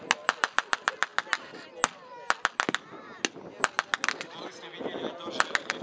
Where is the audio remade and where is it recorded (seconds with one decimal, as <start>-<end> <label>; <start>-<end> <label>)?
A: 0.0-5.8 recorded